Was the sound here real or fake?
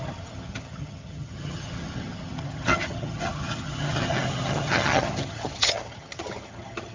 fake